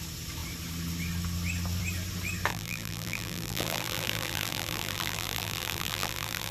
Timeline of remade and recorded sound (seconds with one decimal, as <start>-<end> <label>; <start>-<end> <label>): 0.0-2.5 recorded; 2.5-6.5 remade